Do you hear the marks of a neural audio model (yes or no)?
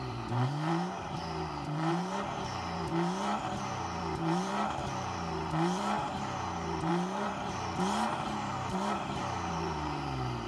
yes